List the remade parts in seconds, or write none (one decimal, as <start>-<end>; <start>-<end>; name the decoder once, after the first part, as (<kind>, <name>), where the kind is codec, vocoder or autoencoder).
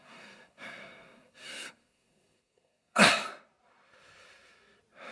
0.0-3.1 (codec, SNAC)